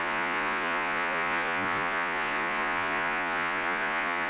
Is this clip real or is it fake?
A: fake